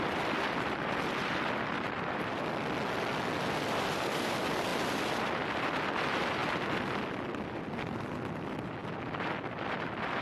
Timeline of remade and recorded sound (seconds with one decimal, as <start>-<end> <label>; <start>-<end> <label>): 0.0-10.2 recorded